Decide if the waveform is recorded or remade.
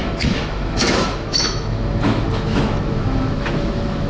remade